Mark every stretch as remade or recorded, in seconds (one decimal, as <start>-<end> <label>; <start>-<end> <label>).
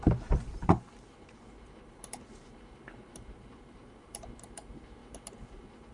0.0-5.0 remade; 5.0-5.5 recorded; 5.5-5.9 remade